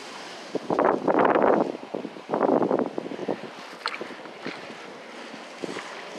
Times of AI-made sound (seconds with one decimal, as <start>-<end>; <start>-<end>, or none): 0.0-2.3